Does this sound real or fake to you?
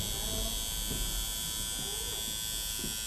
real